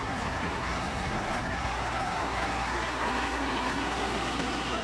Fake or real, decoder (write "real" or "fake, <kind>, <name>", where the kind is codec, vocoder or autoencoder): fake, codec, SNAC